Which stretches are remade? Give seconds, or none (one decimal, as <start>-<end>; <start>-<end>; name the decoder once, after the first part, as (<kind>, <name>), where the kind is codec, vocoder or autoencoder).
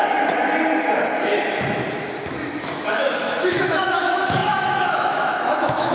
0.8-1.3 (autoencoder, DAC-VAE); 2.6-5.9